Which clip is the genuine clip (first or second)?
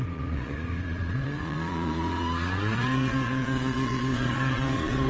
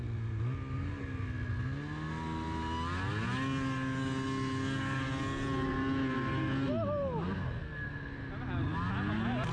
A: second